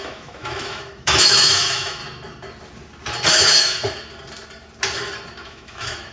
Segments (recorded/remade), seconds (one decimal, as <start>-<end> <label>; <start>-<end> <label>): 0.0-2.0 remade; 2.0-3.3 recorded; 3.3-3.8 remade; 3.8-5.4 recorded; 5.4-6.1 remade